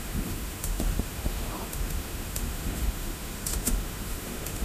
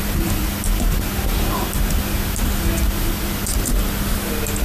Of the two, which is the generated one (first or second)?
first